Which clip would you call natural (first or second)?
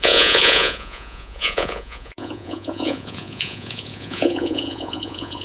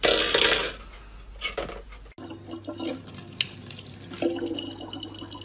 second